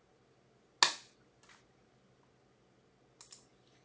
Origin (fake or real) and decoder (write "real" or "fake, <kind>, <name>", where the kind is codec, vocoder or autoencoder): real